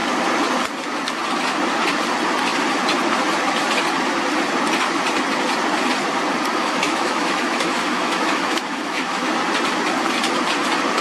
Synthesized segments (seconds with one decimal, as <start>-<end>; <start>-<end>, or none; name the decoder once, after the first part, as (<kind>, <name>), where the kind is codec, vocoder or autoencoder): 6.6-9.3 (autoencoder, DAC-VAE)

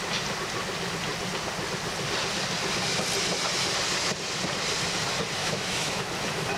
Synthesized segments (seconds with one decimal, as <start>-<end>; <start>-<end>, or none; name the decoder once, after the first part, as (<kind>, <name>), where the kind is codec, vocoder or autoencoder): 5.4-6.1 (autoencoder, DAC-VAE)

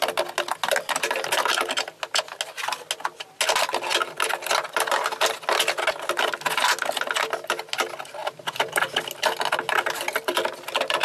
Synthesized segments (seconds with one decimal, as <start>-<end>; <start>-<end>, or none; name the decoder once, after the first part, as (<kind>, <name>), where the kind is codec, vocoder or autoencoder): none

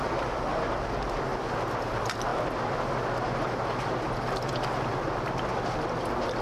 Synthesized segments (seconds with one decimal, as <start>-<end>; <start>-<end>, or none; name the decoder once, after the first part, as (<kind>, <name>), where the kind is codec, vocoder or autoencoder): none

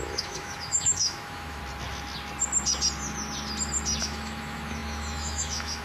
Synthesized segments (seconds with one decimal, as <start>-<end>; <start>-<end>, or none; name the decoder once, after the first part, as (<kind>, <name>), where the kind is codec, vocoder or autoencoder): 0.0-1.6 (autoencoder, DAC-VAE); 4.0-5.8

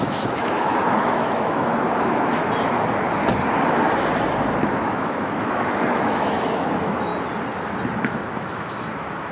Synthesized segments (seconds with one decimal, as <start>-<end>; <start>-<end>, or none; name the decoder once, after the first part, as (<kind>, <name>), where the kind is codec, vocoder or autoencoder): 0.0-2.4 (autoencoder, DAC-VAE); 4.6-7.1; 8.0-9.3

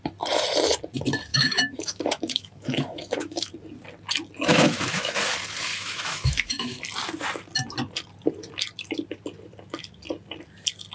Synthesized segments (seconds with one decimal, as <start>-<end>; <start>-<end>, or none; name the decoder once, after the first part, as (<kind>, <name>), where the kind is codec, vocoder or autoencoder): 1.3-3.5 (autoencoder, DAC-VAE); 4.5-5.2; 5.7-6.8